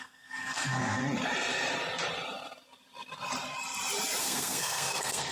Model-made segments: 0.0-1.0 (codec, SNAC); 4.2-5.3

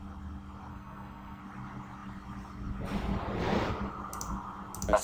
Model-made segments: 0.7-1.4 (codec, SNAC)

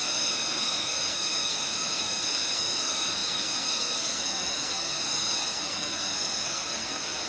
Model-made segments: 0.0-7.3 (codec, SNAC)

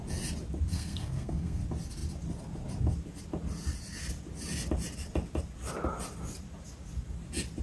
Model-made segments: 0.7-1.6 (codec, SNAC)